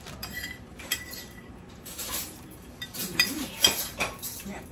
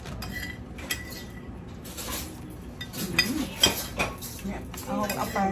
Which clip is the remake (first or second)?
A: first